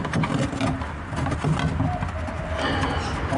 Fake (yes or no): no